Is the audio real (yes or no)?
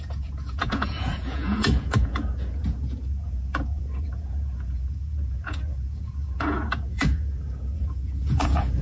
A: no